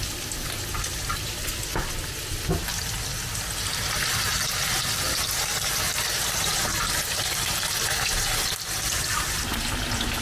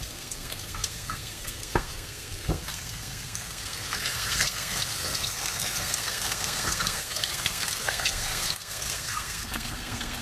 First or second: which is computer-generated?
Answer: second